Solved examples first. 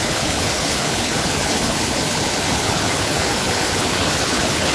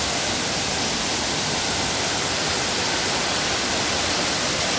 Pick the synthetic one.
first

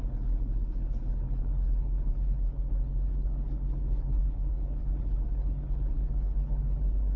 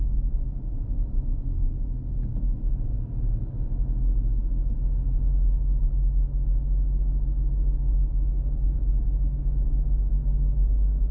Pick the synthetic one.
first